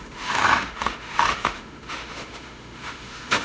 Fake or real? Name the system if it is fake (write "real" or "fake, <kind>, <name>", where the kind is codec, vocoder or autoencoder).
fake, autoencoder, DAC-VAE